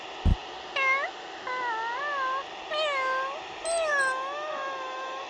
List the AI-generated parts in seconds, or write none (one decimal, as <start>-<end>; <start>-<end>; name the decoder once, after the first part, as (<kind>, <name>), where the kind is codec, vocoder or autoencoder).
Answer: 3.9-5.3 (autoencoder, DAC-VAE)